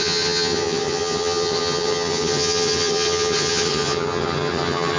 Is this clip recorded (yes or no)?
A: no